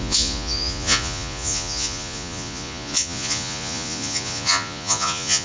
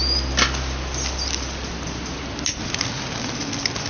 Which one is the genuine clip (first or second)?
second